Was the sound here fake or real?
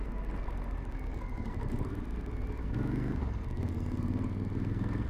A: fake